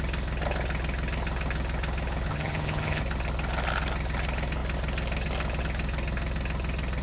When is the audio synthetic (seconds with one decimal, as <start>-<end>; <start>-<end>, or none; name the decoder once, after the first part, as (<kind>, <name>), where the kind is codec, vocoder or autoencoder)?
2.3-3.0 (vocoder, HiFi-GAN)

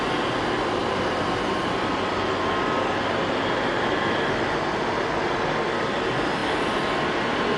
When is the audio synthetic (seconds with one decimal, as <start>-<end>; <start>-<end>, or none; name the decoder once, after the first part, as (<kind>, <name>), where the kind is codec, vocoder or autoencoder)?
none

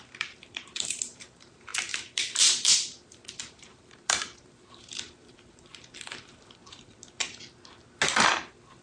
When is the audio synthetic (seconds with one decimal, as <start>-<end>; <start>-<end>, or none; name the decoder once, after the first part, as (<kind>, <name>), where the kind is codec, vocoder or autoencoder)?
0.0-5.7 (vocoder, BigVGAN v2); 8.4-8.8

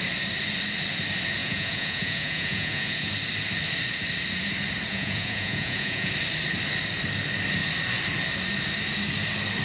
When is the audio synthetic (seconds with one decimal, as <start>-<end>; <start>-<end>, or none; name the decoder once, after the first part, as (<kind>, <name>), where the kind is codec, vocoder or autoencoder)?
1.4-3.1 (vocoder, Vocos); 4.9-6.1

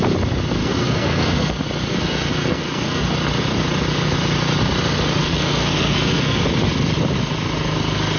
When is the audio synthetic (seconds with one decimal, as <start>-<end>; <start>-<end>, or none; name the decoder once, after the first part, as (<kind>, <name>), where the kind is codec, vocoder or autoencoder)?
0.6-1.5 (codec, SNAC); 1.9-3.0; 5.2-6.4

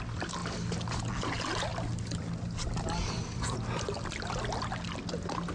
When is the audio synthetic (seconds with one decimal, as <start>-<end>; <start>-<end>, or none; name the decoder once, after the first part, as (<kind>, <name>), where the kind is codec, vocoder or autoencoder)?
none